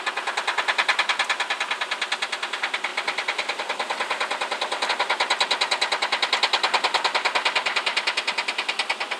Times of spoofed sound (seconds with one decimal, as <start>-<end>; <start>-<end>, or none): none